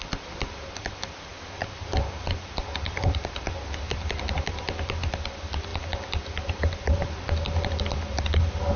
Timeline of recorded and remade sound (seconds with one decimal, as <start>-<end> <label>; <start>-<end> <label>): 0.0-8.8 recorded